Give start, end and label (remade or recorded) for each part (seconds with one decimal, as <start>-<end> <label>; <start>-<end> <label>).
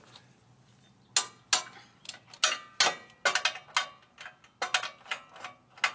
0.0-5.9 recorded